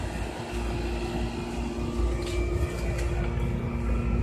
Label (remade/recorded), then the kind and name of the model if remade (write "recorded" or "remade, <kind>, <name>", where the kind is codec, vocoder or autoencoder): recorded